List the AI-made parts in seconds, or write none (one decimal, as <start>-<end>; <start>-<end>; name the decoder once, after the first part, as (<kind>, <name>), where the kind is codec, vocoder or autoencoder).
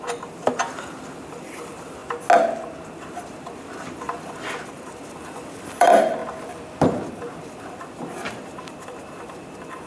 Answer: 0.0-2.0 (vocoder, BigVGAN v2); 2.9-6.2; 7.4-9.9